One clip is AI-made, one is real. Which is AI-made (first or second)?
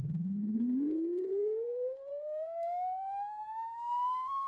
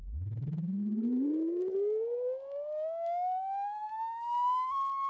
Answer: first